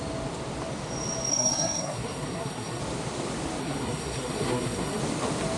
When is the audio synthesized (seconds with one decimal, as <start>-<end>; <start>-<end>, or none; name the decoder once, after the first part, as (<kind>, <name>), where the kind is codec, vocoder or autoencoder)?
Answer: 1.3-2.8 (codec, SNAC); 3.6-5.0